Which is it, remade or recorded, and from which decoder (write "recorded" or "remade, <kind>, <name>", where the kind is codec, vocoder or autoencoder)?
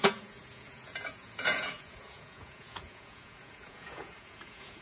remade, vocoder, Vocos